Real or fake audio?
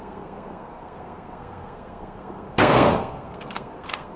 fake